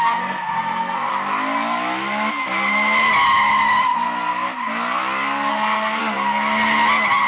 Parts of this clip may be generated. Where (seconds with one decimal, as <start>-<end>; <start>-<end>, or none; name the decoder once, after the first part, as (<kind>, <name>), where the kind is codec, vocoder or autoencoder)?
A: 0.0-1.1 (codec, SNAC); 5.5-6.0